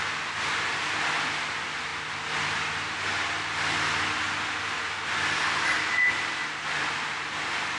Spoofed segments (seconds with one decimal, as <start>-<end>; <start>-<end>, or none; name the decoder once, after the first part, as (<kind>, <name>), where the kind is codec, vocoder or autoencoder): none